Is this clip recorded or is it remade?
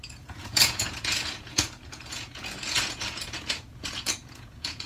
remade